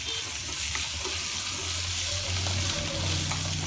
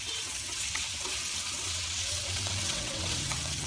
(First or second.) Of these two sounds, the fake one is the second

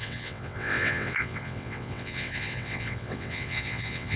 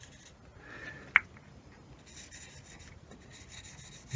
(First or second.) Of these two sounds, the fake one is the first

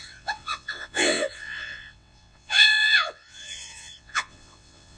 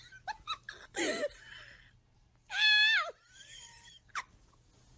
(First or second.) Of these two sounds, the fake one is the first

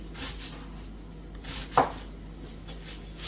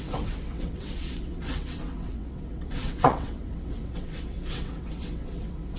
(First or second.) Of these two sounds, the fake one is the second